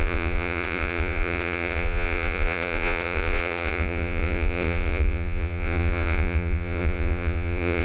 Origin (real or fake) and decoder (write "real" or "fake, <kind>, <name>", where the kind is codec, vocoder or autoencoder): fake, vocoder, Vocos